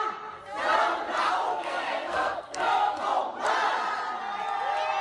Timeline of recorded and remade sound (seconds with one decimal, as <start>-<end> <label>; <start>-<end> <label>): 0.0-1.5 recorded; 1.5-3.0 remade; 3.0-5.0 recorded